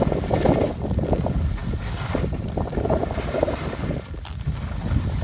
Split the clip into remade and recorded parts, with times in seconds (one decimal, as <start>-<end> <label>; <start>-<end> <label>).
0.0-5.2 recorded